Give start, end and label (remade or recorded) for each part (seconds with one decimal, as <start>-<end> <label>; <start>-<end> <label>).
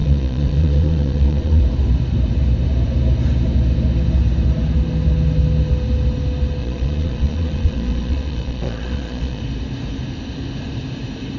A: 0.0-1.6 remade; 1.6-6.6 recorded; 6.6-9.4 remade; 9.4-11.4 recorded